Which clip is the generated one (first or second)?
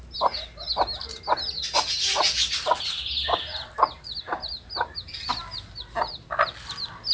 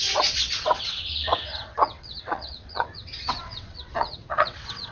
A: second